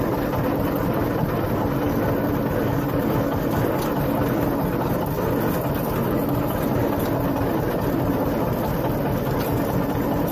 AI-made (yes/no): no